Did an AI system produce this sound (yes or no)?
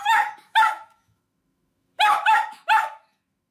yes